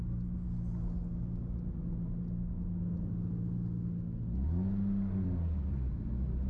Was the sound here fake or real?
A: real